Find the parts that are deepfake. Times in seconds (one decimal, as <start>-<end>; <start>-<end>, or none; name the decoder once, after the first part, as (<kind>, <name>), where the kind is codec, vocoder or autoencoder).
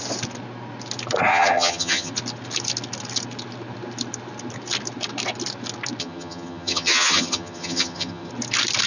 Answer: 1.3-2.1 (vocoder, HiFi-GAN); 6.0-8.3